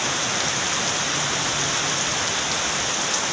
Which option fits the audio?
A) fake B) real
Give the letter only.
B